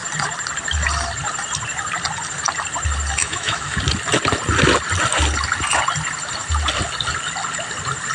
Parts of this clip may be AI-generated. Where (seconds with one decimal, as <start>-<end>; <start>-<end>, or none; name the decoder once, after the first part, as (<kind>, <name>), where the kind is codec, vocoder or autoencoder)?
3.2-3.8 (autoencoder, DAC-VAE)